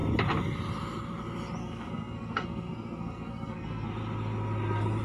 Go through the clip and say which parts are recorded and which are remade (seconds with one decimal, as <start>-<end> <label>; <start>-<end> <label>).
0.0-1.6 recorded; 1.6-3.9 remade; 3.9-5.0 recorded